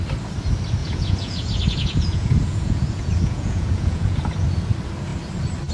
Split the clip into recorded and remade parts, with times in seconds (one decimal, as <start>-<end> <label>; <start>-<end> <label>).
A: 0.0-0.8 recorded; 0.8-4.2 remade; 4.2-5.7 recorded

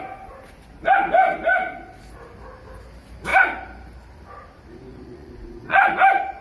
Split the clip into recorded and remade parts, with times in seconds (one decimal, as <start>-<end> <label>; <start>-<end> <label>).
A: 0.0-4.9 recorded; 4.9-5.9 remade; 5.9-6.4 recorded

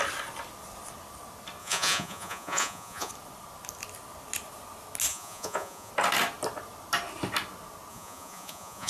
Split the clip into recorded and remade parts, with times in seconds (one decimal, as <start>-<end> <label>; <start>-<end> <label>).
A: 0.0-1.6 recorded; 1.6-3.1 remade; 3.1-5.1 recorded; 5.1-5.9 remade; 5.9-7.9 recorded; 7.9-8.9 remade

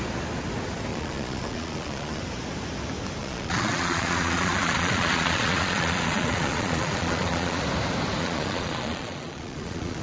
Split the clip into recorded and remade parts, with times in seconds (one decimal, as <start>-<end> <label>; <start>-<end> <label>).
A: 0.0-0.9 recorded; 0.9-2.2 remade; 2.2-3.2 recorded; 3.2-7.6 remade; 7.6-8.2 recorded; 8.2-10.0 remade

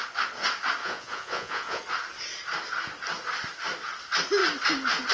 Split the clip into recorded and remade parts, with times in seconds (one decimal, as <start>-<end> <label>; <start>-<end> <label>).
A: 0.0-0.8 recorded; 0.8-1.8 remade; 1.8-5.1 recorded

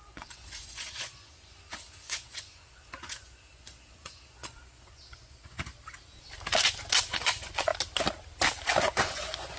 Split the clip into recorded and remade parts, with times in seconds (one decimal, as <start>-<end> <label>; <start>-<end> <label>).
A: 0.0-5.7 remade; 5.7-7.1 recorded; 7.1-7.7 remade; 7.7-8.8 recorded; 8.8-9.6 remade